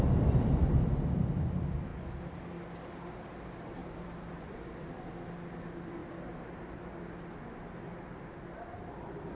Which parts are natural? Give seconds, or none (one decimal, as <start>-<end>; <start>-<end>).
0.0-3.8; 5.1-9.3